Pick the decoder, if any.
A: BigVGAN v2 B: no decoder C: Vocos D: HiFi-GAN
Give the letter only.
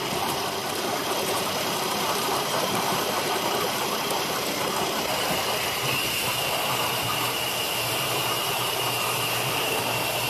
A